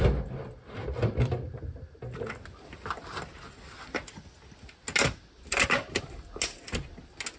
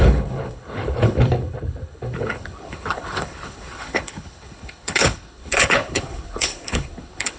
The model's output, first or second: second